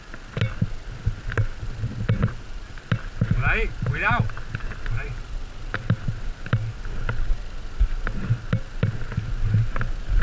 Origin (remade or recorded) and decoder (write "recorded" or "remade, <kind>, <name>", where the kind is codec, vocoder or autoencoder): recorded